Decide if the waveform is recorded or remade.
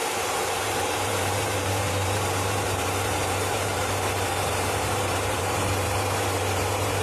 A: remade